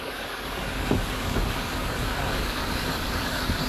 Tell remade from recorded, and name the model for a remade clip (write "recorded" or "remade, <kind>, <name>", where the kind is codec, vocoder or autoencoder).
remade, codec, DAC